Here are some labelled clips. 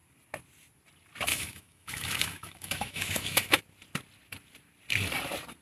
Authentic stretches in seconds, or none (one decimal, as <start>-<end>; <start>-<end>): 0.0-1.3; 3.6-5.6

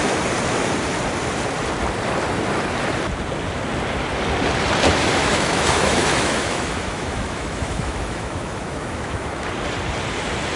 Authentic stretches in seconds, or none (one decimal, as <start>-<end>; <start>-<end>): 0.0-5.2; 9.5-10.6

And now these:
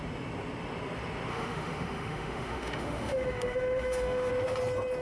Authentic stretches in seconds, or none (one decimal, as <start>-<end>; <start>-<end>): 0.0-1.3; 4.3-5.0

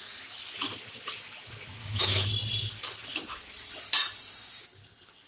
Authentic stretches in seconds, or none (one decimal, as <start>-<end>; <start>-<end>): 0.0-1.8; 2.3-5.3

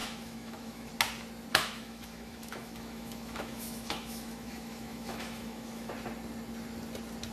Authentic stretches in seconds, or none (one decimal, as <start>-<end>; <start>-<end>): 0.9-1.5; 5.9-7.3

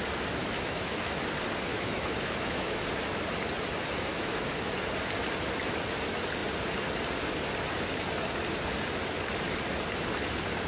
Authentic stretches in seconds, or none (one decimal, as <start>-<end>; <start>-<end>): 0.0-0.4; 1.2-1.7; 2.8-4.1; 4.7-10.7

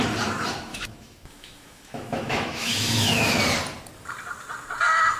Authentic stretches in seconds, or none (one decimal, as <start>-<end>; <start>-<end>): 0.0-0.7; 3.4-5.2

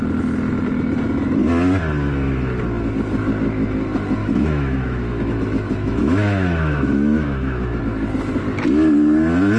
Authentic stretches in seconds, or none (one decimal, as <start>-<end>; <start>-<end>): 0.0-4.2; 7.8-9.6